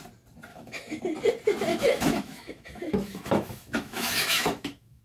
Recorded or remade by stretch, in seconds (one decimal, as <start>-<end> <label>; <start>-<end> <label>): 0.0-0.5 recorded; 0.5-1.0 remade; 1.0-1.7 recorded; 1.7-5.0 remade